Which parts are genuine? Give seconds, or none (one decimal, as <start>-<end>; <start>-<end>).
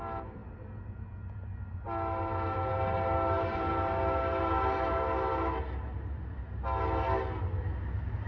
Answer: 0.0-8.3